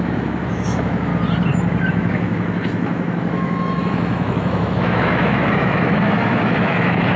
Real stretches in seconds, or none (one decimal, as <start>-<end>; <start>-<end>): 1.1-1.9